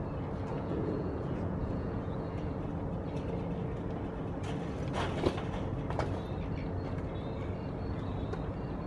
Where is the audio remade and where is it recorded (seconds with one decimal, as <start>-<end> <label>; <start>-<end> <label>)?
0.0-0.5 recorded; 0.5-2.5 remade; 2.5-8.9 recorded